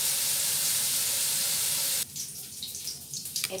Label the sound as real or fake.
fake